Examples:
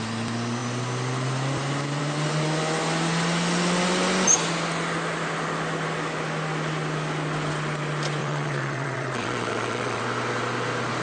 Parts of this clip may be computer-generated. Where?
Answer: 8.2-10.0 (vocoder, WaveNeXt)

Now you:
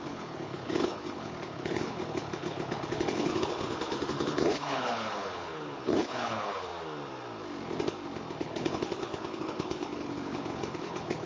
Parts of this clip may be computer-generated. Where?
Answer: 0.0-6.7 (codec, HILCodec); 8.4-11.3